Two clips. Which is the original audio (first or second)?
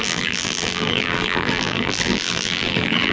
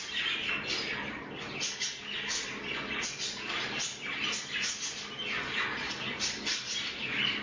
second